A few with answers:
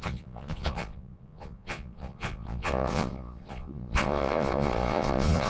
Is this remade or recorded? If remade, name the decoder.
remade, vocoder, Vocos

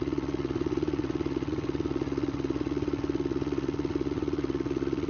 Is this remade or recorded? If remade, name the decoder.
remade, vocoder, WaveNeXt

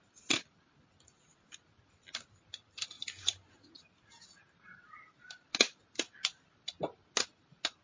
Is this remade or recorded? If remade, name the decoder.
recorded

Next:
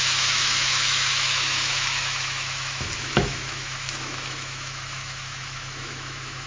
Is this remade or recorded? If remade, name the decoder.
remade, autoencoder, DAC-VAE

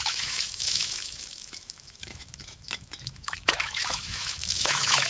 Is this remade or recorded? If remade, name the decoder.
remade, autoencoder, DAC-VAE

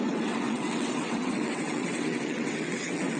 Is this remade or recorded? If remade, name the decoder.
remade, vocoder, WaveNeXt